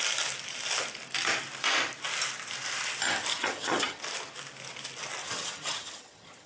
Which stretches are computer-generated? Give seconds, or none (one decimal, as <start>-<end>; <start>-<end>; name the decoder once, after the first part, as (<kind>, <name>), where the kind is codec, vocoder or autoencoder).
3.3-4.0 (vocoder, HiFi-GAN); 5.2-6.5